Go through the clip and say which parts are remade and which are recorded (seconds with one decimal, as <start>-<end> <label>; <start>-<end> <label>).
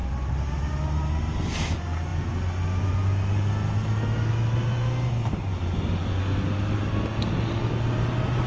0.0-8.5 recorded